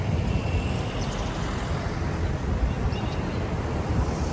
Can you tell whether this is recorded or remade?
remade